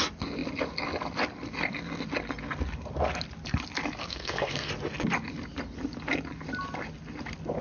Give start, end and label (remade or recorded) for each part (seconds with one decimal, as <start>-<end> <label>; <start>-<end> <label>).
0.0-4.0 recorded; 4.0-4.7 remade; 4.7-7.6 recorded